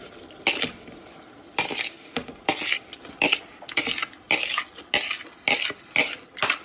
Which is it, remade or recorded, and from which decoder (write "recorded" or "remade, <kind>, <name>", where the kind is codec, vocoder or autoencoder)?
recorded